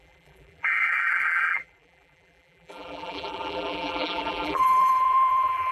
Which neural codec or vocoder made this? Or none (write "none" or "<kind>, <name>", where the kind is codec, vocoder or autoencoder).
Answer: vocoder, BigVGAN v2